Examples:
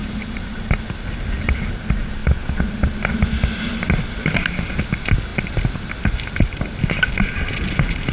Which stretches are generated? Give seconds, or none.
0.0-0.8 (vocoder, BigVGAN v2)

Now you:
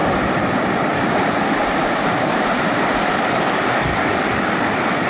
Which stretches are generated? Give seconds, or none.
3.1-5.1 (codec, DAC)

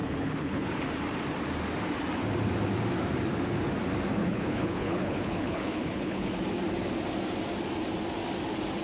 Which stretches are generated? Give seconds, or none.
0.0-0.8 (codec, HILCodec); 4.2-6.3

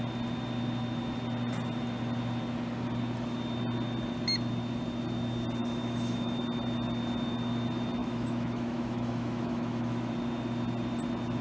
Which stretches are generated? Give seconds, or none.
5.6-6.4 (autoencoder, DAC-VAE); 8.0-10.1

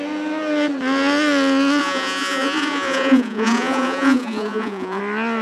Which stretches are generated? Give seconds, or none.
1.8-5.0 (vocoder, Vocos)

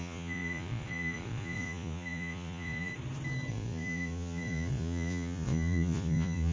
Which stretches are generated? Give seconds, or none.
0.0-2.9 (vocoder, Vocos); 3.5-6.5

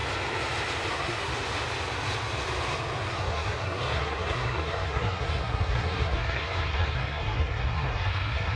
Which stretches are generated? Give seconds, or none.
0.9-1.3 (codec, SNAC); 3.1-8.6

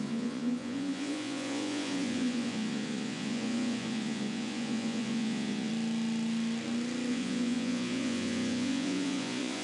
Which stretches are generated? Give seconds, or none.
0.0-5.7 (vocoder, Vocos); 7.1-9.6